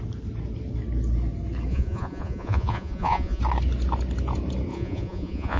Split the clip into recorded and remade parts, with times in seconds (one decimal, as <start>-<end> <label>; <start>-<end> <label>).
0.0-1.7 recorded; 1.7-3.4 remade; 3.4-4.7 recorded; 4.7-5.6 remade